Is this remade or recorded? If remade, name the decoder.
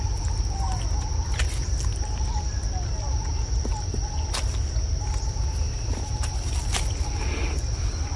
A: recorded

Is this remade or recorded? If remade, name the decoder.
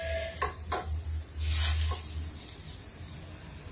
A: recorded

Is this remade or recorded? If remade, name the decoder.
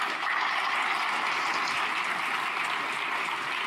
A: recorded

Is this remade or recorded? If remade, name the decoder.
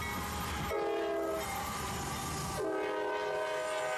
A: recorded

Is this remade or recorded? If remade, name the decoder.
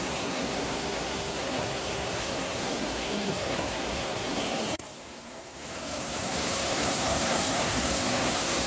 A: remade, codec, SNAC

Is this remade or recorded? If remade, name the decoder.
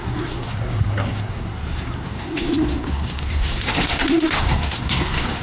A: remade, codec, SNAC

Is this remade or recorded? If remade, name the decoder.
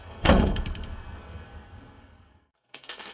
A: remade, codec, SNAC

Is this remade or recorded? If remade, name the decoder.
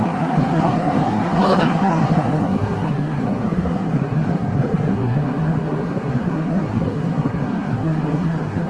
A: remade, codec, SNAC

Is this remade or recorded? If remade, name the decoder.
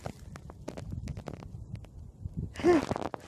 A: recorded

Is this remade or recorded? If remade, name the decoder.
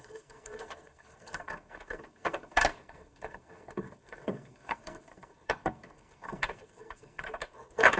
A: remade, codec, SNAC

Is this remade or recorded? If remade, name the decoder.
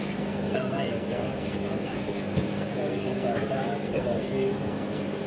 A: remade, codec, SNAC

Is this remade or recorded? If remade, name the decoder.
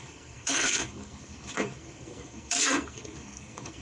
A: remade, codec, SNAC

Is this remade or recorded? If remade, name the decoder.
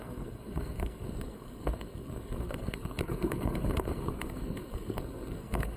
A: remade, codec, SNAC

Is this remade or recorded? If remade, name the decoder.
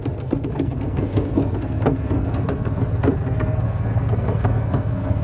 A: remade, codec, SNAC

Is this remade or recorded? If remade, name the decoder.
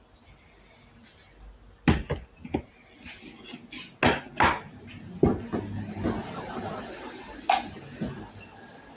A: recorded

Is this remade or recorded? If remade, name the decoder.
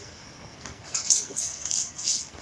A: remade, codec, SNAC